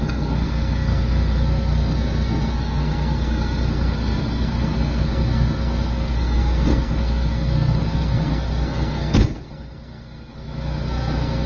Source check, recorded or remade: remade